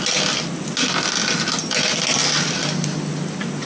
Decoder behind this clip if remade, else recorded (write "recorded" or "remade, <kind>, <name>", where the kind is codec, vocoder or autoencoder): recorded